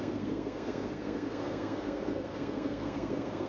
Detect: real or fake fake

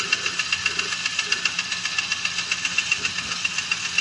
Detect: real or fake real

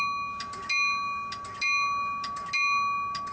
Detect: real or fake real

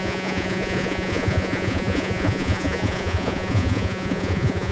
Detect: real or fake fake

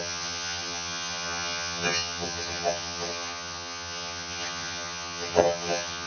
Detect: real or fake fake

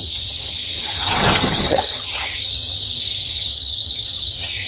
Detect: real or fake fake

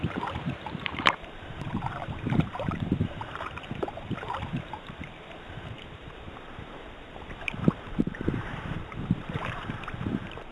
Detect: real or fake fake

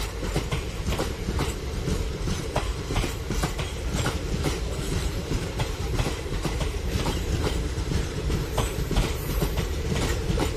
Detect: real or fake fake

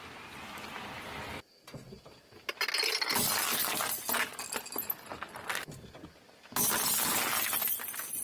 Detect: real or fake real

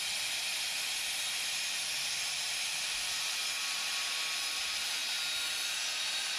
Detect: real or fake real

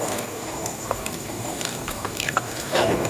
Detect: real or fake fake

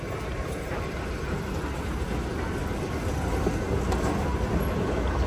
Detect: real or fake real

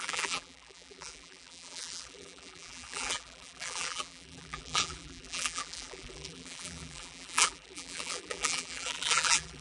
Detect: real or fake fake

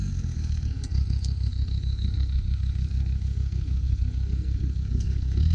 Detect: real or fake fake